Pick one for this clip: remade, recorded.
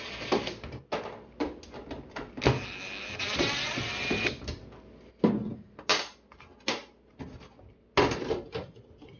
recorded